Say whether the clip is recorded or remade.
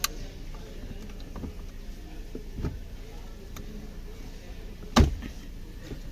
recorded